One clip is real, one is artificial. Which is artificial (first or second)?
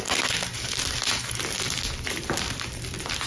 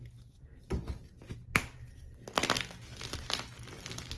first